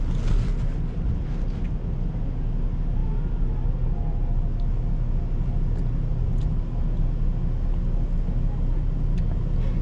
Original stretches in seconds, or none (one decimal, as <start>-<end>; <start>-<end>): 0.0-9.8